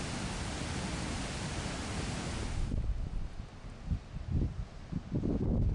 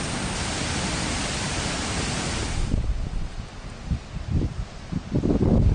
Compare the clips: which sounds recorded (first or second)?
first